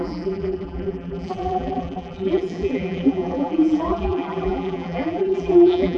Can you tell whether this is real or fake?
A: fake